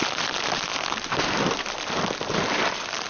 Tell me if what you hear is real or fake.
real